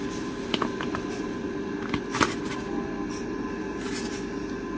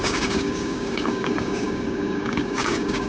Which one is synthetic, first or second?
second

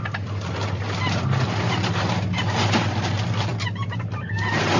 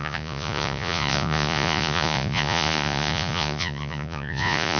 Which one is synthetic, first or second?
second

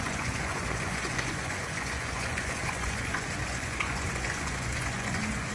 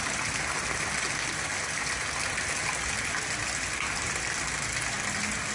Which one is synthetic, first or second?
first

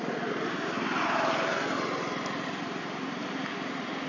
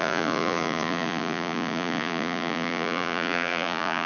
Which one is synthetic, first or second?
second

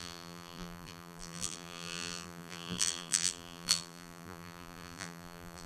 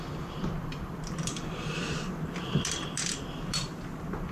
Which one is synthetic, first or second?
first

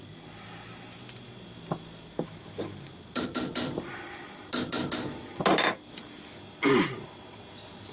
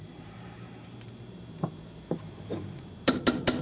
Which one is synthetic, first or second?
second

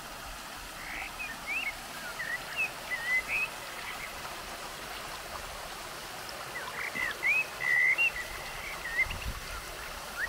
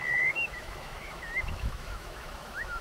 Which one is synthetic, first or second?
second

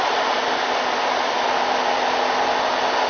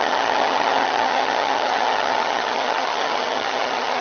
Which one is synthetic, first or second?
second